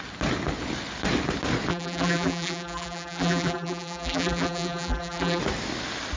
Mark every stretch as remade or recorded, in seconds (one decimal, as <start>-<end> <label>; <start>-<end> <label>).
0.0-1.7 recorded; 1.7-5.4 remade; 5.4-6.2 recorded